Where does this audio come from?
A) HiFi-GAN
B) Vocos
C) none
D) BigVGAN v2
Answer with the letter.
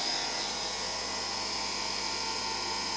C